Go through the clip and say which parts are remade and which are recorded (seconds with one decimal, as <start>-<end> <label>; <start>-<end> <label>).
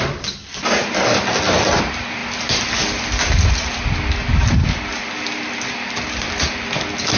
0.0-7.2 recorded